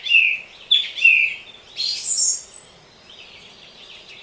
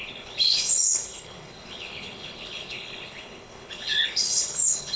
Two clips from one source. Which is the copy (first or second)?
second